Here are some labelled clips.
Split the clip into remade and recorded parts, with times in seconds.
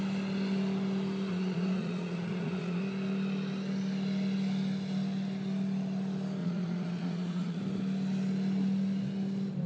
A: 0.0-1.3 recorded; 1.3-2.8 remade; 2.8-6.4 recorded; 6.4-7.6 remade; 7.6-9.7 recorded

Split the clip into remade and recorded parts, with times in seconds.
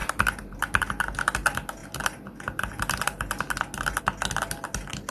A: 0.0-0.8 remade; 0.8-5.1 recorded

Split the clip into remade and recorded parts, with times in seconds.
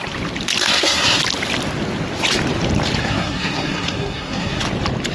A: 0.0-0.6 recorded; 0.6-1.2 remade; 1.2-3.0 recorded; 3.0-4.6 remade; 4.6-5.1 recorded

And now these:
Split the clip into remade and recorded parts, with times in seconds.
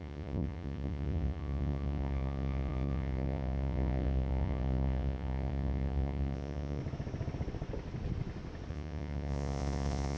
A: 0.0-6.8 remade; 6.8-8.7 recorded; 8.7-10.2 remade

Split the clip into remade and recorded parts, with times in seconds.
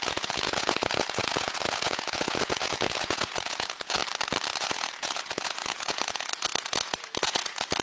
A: 0.0-4.0 remade; 4.0-4.6 recorded; 4.6-7.8 remade